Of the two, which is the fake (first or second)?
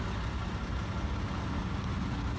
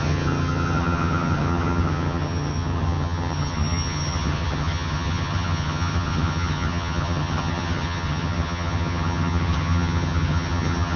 second